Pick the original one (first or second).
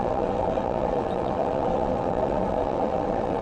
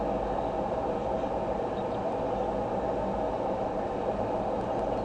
second